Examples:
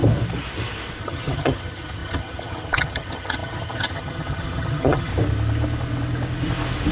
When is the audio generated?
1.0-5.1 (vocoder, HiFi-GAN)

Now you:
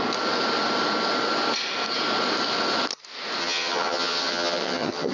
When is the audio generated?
3.4-5.1 (vocoder, HiFi-GAN)

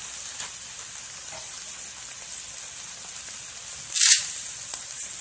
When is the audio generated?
none

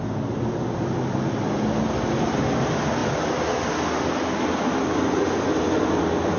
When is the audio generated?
none

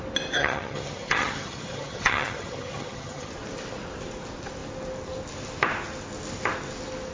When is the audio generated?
0.4-3.3 (vocoder, HiFi-GAN)

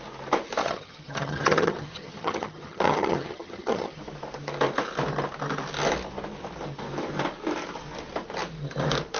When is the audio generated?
0.6-4.0 (vocoder, HiFi-GAN)

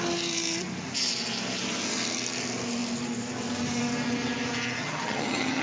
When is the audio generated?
4.8-5.6 (vocoder, HiFi-GAN)